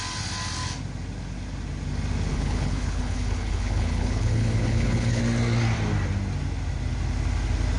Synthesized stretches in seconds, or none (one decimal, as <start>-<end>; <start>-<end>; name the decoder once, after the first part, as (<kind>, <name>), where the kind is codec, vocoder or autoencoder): 2.3-5.2 (codec, HILCodec)